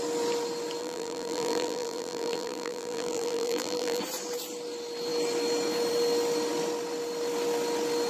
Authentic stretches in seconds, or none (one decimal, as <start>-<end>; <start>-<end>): 0.0-0.8; 4.0-8.1